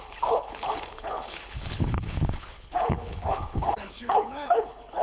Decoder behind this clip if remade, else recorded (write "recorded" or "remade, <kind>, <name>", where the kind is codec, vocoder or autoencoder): remade, codec, HILCodec